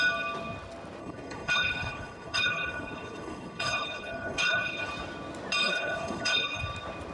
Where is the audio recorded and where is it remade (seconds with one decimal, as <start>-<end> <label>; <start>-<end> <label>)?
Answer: 0.0-1.0 recorded; 1.0-4.9 remade; 4.9-5.6 recorded; 5.6-6.6 remade; 6.6-7.1 recorded